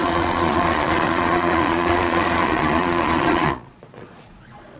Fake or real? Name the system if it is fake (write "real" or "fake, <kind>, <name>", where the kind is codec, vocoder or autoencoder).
fake, vocoder, Vocos